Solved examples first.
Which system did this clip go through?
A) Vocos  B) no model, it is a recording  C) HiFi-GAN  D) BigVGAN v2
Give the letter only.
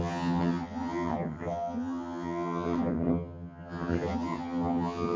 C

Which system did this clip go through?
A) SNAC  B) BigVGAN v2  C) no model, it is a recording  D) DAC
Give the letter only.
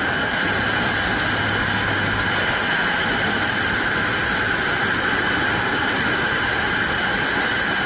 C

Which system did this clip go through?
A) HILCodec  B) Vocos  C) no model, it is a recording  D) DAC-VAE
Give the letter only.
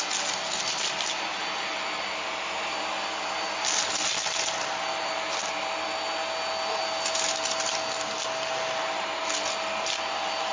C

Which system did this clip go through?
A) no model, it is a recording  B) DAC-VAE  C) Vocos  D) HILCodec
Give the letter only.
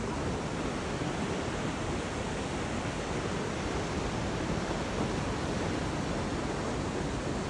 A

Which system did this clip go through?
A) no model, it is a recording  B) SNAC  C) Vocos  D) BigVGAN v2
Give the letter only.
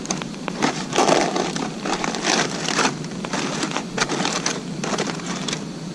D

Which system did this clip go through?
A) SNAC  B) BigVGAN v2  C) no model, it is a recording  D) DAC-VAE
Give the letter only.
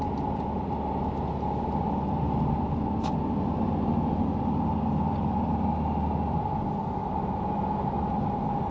C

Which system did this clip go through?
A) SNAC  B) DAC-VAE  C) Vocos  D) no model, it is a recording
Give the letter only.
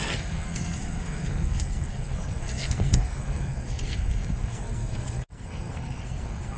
A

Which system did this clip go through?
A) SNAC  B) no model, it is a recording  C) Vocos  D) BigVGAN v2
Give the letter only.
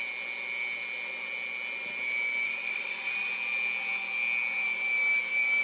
B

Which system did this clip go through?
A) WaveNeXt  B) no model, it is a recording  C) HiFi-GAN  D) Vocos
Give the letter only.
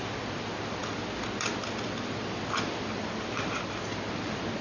B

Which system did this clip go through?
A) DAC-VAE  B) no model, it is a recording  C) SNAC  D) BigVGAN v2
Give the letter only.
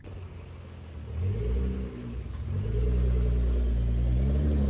B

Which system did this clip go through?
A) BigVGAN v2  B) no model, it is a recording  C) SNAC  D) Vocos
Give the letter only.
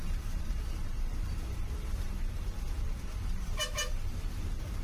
A